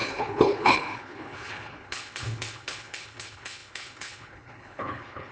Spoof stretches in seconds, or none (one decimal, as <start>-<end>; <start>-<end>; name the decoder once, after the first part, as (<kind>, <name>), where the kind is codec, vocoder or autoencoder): 0.0-5.3 (codec, HILCodec)